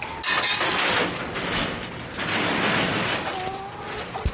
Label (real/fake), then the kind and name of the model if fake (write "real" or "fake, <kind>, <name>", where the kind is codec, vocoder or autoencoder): real